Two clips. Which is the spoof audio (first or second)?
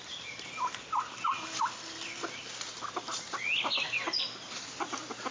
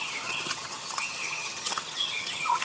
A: second